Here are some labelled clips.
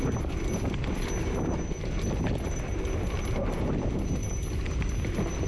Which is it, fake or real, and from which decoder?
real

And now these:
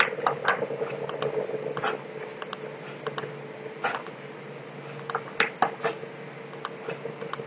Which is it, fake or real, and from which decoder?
real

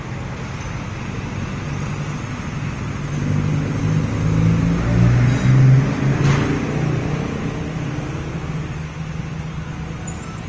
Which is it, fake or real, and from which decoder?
real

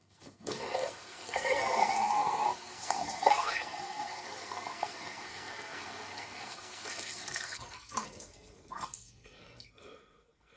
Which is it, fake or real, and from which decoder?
fake, codec, SNAC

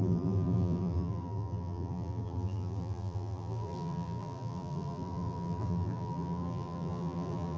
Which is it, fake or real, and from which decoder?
fake, vocoder, BigVGAN v2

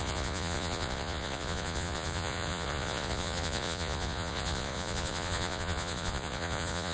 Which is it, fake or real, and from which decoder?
fake, vocoder, Vocos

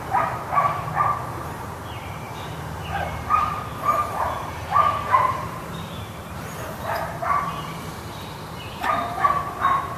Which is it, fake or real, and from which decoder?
fake, vocoder, BigVGAN v2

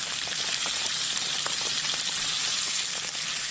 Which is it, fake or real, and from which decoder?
real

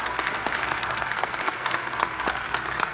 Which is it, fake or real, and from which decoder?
fake, codec, SNAC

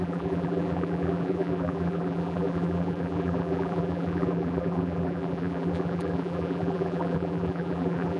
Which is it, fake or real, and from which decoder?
fake, vocoder, BigVGAN v2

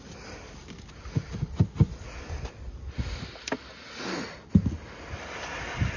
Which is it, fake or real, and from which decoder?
real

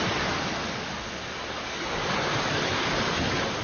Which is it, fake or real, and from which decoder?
real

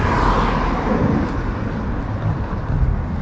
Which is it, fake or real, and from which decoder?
real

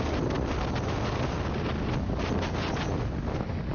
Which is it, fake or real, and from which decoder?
real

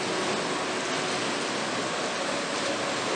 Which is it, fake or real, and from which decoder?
real